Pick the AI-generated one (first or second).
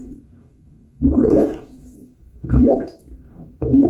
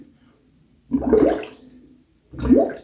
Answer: first